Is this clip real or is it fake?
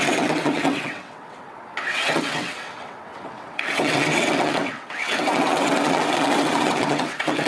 fake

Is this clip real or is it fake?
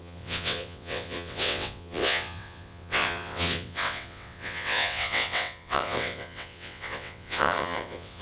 fake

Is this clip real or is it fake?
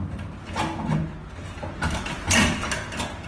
real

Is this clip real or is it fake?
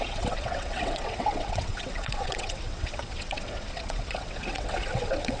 fake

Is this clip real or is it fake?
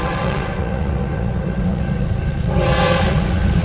fake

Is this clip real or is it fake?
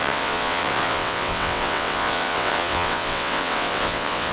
fake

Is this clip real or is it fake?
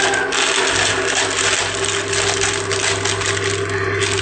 real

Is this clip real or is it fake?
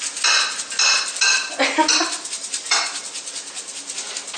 real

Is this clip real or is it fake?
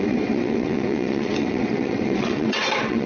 fake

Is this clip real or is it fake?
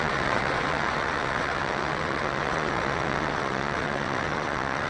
fake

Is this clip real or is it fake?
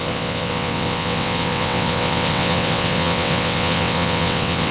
fake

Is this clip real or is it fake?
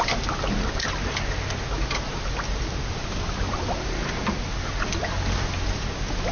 real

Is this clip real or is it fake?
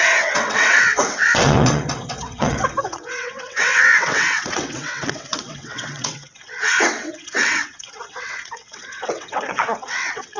fake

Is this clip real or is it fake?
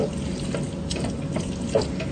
real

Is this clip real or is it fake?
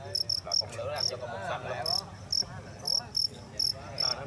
real